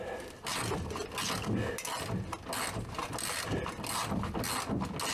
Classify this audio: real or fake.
real